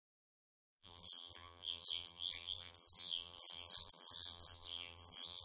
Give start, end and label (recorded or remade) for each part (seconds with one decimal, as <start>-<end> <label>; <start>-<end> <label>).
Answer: 0.0-5.4 remade